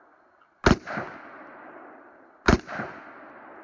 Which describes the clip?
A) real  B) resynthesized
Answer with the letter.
A